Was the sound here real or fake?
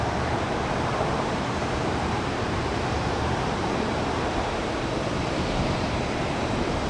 fake